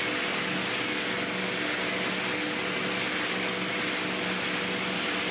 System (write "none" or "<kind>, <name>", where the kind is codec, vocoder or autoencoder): none